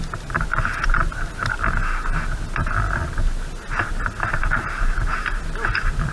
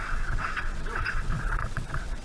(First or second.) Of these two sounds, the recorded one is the first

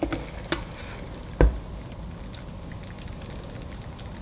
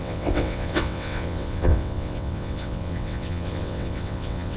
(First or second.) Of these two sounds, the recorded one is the first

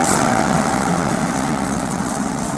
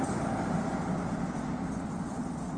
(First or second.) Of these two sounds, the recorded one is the second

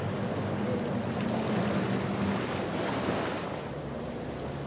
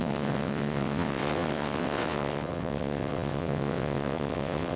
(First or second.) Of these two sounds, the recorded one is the first